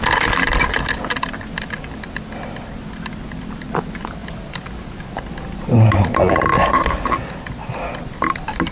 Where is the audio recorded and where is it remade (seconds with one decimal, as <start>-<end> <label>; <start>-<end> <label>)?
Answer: 0.0-8.7 recorded